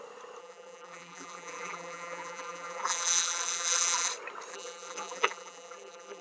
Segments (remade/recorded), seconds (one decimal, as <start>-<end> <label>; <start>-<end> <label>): 0.0-0.4 recorded; 0.4-4.1 remade; 4.1-4.5 recorded; 4.5-6.2 remade